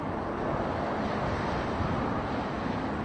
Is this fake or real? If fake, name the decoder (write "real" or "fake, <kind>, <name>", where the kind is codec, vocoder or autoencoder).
real